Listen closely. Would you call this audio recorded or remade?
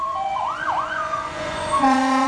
remade